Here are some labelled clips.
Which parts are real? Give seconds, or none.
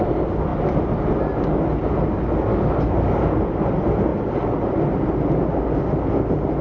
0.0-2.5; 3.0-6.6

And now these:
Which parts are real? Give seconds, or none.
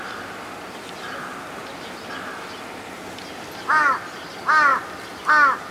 0.0-5.7